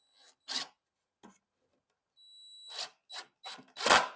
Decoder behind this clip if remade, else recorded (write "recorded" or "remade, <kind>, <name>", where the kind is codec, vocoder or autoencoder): recorded